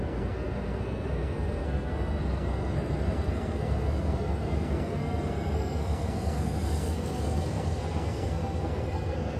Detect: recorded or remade remade